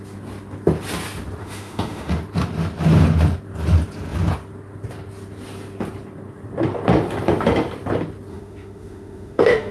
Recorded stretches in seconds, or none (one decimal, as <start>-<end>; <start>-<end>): 0.0-1.4; 2.1-8.3